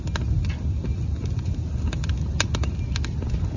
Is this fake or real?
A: real